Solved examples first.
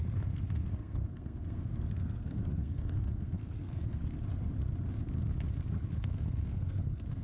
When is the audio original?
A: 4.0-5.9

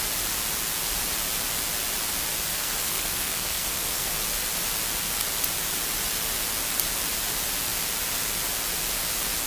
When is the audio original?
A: 0.0-2.5; 4.1-9.5

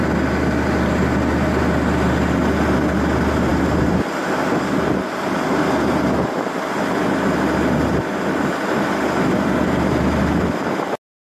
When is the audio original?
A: 0.0-11.3

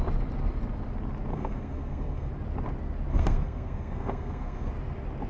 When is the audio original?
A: 0.0-1.3; 2.3-3.1; 4.7-5.3

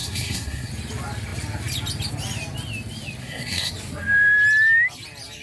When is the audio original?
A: 0.7-3.2; 3.7-5.4

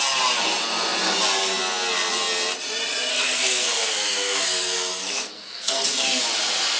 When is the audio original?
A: 0.0-3.1; 6.2-6.8

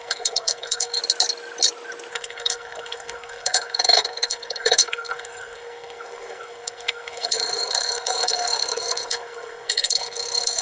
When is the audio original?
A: 1.0-2.1